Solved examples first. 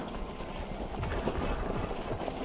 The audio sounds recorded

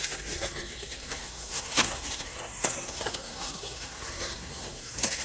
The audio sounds remade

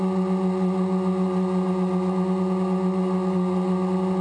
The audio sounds recorded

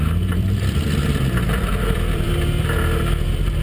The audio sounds remade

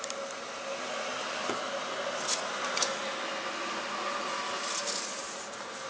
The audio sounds recorded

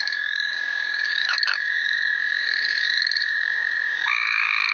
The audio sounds remade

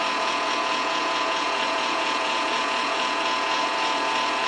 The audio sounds remade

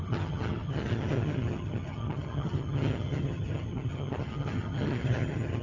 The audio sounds remade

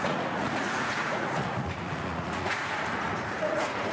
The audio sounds remade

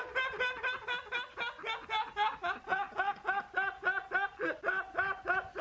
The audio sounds recorded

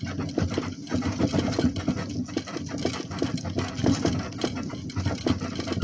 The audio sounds recorded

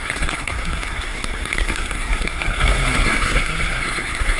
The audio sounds remade